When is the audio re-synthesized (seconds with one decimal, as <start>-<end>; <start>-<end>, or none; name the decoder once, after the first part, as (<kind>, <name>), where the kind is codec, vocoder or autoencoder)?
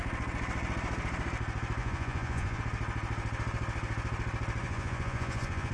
1.8-2.6 (vocoder, Vocos); 4.6-5.7